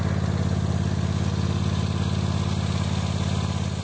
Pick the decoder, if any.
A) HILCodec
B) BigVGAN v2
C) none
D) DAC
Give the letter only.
C